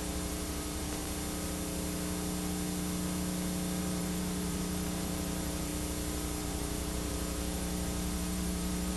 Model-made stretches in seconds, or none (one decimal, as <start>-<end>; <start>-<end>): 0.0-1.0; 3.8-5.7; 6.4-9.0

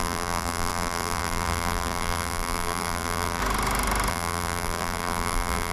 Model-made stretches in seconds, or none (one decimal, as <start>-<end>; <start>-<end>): 0.0-3.4; 4.1-5.7

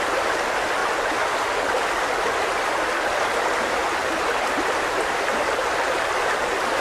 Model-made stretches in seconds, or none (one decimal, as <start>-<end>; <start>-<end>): none